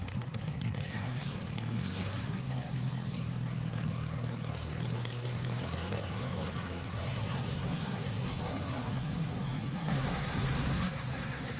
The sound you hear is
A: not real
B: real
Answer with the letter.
A